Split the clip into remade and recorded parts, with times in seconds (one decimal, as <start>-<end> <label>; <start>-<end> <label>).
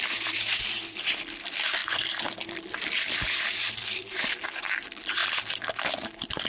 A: 0.0-5.2 remade; 5.2-6.5 recorded